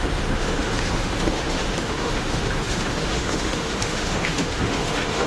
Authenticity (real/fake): fake